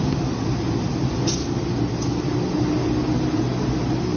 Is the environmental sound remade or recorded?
recorded